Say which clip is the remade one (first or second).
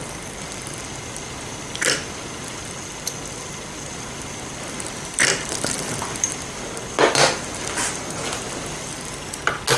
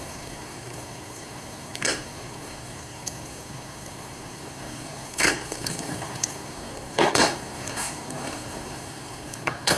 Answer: second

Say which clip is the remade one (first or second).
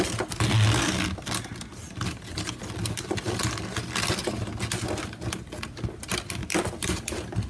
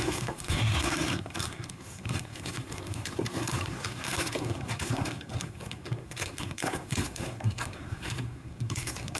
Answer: second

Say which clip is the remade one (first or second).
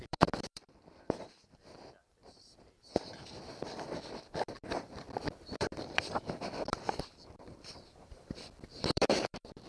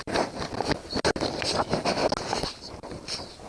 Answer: first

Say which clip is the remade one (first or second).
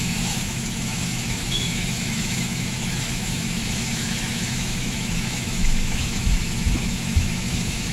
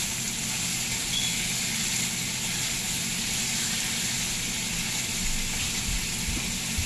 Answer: first